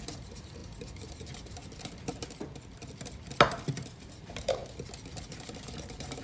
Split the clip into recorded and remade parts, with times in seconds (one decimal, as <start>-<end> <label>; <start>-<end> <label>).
0.0-1.6 remade; 1.6-3.9 recorded; 3.9-4.6 remade; 4.6-5.3 recorded; 5.3-6.2 remade